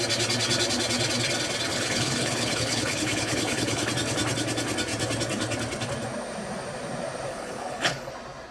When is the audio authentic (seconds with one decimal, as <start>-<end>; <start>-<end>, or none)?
0.0-1.7; 3.9-7.3; 8.1-8.5